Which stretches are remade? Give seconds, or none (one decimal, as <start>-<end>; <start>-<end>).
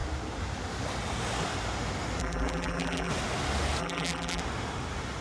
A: 2.2-3.1; 3.8-4.4